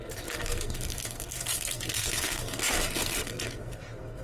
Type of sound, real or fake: fake